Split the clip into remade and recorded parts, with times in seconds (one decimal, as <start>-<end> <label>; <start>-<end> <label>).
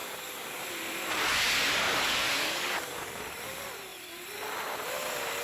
0.0-0.6 remade; 0.6-1.2 recorded; 1.2-3.2 remade; 3.2-5.4 recorded